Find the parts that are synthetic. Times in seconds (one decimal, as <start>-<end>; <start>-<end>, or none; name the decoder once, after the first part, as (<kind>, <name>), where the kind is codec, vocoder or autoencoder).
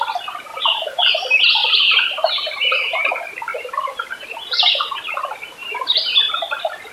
0.5-1.1 (vocoder, BigVGAN v2); 1.6-3.1; 3.5-4.7; 5.6-6.3